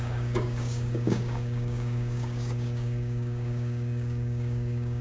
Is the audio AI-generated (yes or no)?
yes